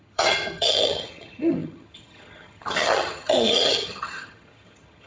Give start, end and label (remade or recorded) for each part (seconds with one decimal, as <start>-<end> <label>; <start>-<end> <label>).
0.0-5.1 remade